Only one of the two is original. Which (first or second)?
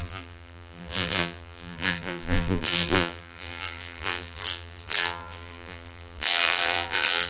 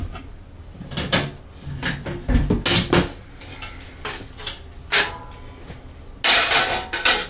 second